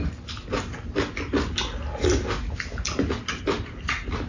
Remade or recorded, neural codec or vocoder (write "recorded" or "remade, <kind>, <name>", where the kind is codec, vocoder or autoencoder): recorded